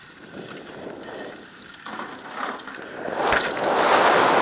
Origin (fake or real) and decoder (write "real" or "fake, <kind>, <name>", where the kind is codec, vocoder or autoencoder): real